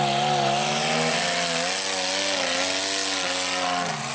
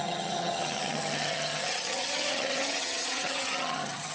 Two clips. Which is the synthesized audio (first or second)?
second